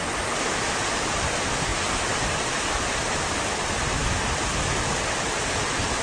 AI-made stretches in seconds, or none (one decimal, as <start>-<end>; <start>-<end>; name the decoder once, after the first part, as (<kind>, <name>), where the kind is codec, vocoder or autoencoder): none